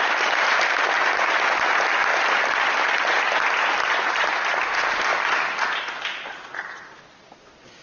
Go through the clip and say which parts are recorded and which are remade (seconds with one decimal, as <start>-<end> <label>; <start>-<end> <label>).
0.0-7.8 recorded